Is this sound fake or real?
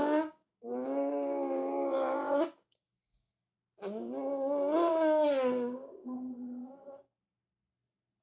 fake